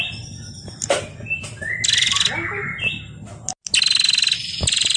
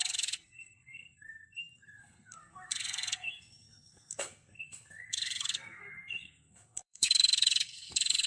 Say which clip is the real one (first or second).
first